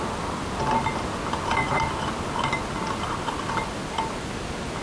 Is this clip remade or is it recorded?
recorded